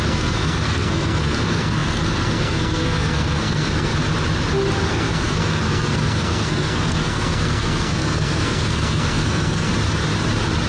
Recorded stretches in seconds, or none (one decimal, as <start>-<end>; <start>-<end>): 3.9-4.9; 9.7-10.7

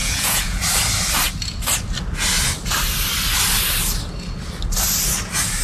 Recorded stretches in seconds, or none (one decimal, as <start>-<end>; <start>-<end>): 0.6-5.6

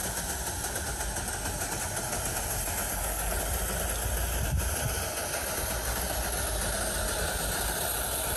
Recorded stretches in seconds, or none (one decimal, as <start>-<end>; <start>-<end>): 0.0-2.8; 3.4-8.4

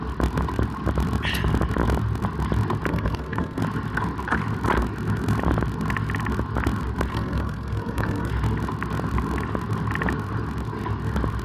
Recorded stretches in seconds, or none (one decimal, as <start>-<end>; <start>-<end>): 0.0-2.9; 3.6-7.1; 8.3-11.4

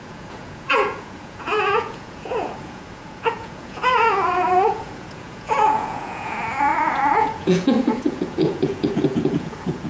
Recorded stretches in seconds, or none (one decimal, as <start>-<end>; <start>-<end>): none